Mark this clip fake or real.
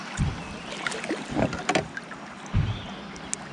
real